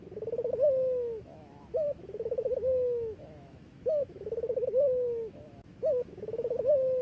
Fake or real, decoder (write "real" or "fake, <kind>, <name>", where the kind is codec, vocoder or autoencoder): fake, autoencoder, DAC-VAE